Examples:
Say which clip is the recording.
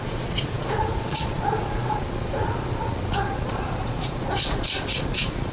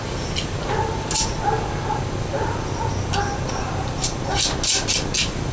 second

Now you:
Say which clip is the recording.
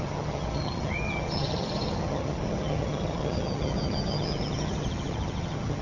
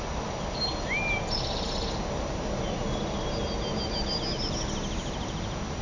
second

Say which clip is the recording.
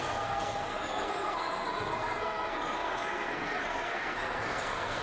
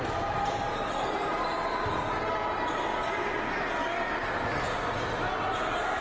second